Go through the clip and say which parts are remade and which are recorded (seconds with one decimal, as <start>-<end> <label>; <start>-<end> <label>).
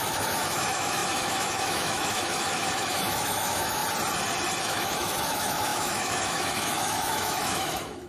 0.0-3.8 remade; 3.8-4.6 recorded; 4.6-8.1 remade